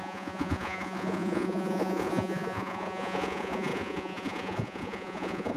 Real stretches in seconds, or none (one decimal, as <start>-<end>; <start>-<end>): none